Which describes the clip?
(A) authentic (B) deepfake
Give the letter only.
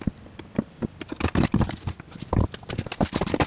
B